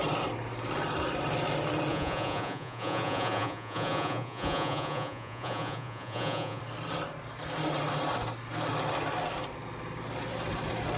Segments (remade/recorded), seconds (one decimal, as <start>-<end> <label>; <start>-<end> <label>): 0.0-1.9 recorded; 1.9-6.6 remade; 6.6-11.0 recorded